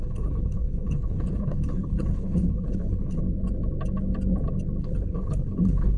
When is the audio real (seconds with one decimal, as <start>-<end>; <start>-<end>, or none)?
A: 3.2-4.8